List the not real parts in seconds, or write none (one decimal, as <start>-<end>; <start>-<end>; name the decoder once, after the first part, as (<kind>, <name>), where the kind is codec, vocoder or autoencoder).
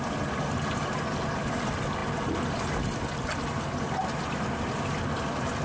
none